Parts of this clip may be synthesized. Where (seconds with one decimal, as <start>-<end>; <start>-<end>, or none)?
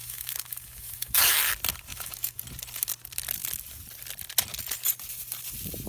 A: 0.0-1.2; 1.9-2.4